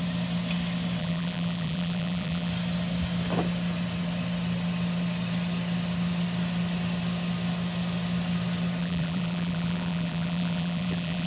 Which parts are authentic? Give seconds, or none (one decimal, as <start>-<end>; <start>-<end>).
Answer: 0.0-1.0; 2.5-8.8